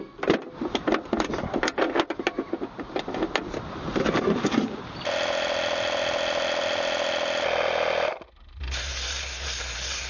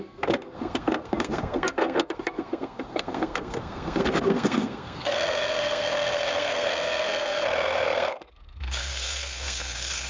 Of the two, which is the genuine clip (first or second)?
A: first